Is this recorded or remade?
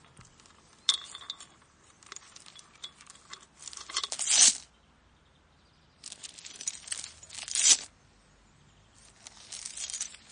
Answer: recorded